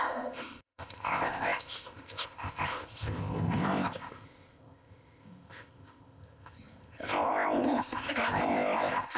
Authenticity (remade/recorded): remade